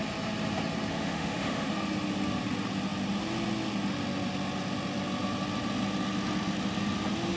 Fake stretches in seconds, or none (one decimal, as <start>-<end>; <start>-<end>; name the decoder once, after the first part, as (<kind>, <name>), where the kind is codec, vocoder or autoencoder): 0.9-1.7 (autoencoder, DAC-VAE)